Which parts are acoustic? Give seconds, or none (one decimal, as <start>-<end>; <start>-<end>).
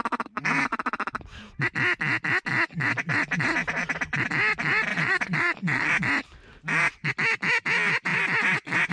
0.0-4.9; 5.9-8.9